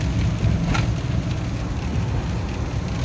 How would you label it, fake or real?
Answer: real